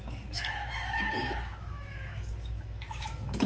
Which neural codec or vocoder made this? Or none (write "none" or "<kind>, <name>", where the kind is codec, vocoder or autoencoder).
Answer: autoencoder, DAC-VAE